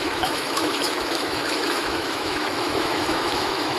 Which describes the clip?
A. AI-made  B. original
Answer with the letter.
A